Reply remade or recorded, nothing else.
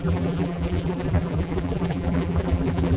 remade